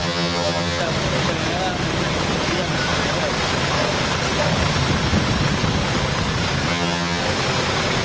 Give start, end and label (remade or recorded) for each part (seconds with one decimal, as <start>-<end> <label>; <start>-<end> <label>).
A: 0.0-0.8 remade; 0.8-6.7 recorded; 6.7-7.2 remade; 7.2-8.0 recorded